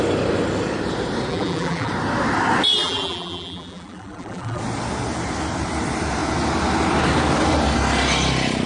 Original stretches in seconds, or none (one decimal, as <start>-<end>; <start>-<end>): 0.0-1.3; 1.9-2.8; 4.6-8.7